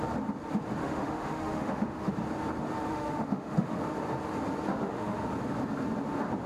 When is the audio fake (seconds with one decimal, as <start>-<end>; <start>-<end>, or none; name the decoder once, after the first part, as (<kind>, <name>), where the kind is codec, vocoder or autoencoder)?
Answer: 0.8-2.1 (autoencoder, DAC-VAE); 2.9-3.8; 4.7-5.3

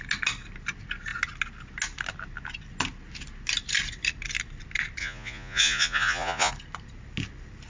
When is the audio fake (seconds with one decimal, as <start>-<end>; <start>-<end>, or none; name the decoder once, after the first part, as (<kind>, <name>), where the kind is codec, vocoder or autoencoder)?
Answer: 5.0-6.5 (vocoder, Vocos)